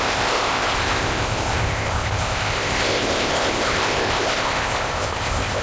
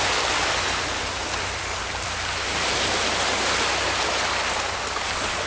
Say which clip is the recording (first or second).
second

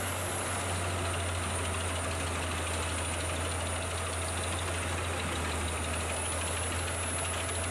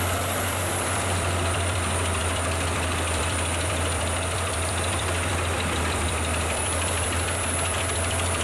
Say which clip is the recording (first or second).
first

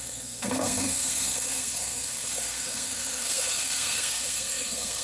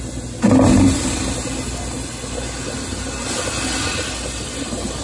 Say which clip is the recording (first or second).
second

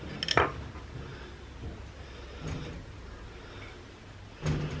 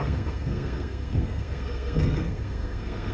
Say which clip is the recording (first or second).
first